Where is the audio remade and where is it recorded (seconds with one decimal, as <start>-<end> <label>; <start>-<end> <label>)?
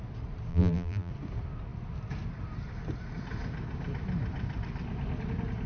0.0-0.5 recorded; 0.5-1.1 remade; 1.1-5.7 recorded